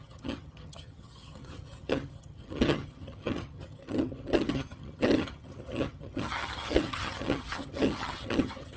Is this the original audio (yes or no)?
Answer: no